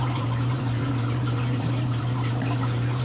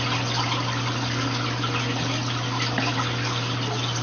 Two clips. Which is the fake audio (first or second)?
first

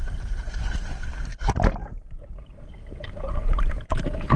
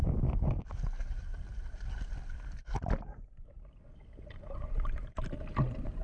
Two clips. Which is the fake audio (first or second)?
first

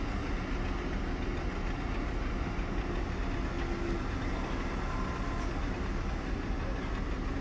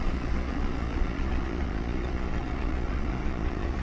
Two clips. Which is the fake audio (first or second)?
second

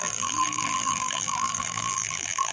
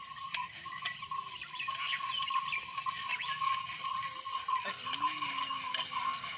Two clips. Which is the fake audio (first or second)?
first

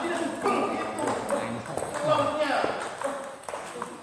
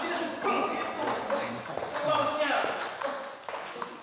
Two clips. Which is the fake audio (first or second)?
second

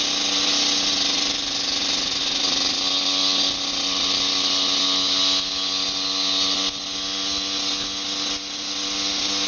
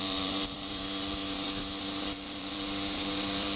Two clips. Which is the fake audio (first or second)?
second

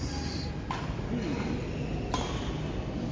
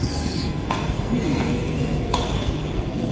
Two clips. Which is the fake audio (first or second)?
second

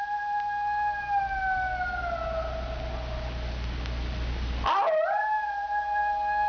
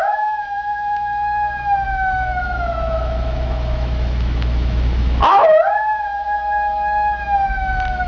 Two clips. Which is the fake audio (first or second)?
second